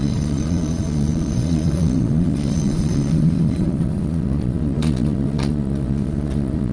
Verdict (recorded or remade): remade